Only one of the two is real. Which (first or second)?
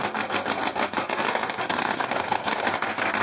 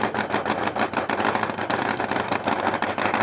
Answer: second